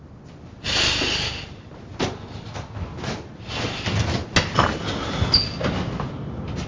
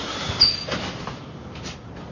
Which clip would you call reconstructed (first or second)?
second